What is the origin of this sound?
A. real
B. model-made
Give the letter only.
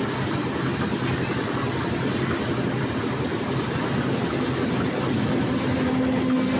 A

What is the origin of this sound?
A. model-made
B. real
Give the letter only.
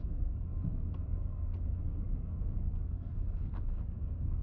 A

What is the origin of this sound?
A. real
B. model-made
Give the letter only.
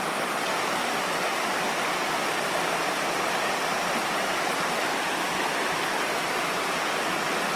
A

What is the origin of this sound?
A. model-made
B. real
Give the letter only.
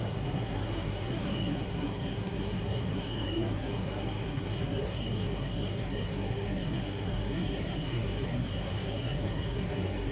A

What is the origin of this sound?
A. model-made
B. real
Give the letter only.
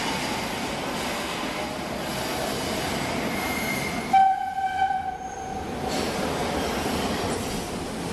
B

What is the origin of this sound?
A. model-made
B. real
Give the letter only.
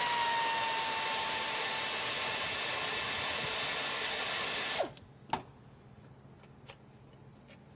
B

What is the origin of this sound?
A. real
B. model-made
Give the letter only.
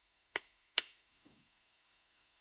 B